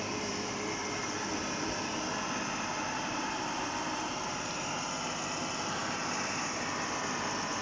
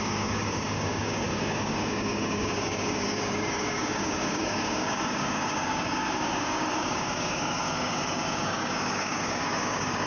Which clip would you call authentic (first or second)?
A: first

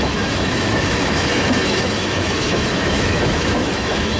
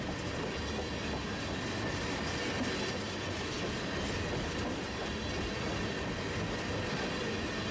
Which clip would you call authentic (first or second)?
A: second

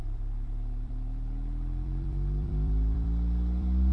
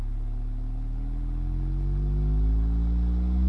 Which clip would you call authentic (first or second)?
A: second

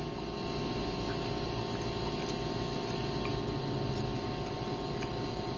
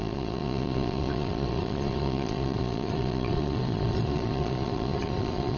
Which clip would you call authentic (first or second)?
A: first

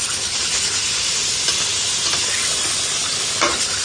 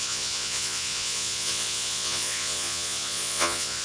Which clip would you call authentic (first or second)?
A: first